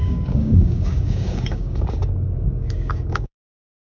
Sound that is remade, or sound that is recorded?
remade